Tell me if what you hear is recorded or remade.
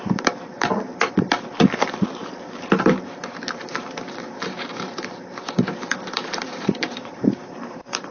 remade